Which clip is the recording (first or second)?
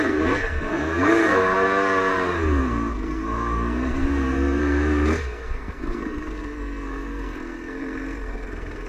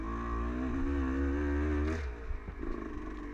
second